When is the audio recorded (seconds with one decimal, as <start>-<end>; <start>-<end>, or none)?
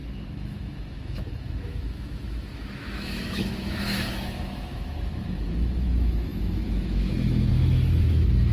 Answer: none